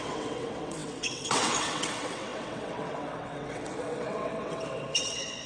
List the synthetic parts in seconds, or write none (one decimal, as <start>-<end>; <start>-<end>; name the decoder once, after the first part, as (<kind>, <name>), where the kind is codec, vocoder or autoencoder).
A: 0.0-5.5 (vocoder, WaveNeXt)